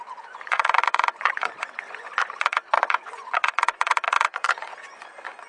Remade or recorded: remade